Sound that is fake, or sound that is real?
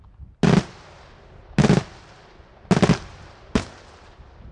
real